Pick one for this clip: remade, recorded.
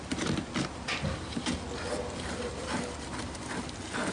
remade